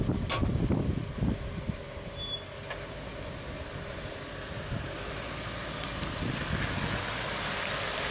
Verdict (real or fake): real